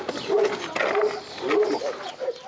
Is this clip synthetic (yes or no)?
no